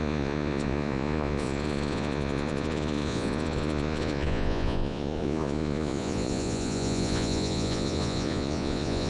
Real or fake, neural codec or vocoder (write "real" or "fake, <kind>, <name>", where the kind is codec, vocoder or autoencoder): fake, vocoder, Vocos